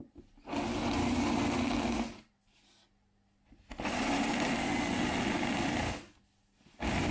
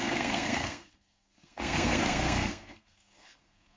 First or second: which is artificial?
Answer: second